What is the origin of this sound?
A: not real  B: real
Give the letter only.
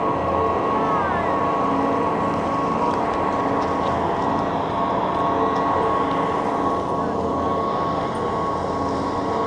B